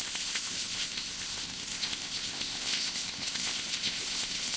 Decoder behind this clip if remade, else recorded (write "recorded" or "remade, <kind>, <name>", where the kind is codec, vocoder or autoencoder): remade, codec, ZipCodec